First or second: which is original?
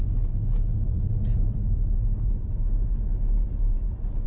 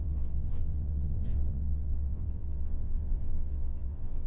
first